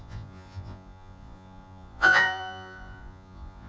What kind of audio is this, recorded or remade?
remade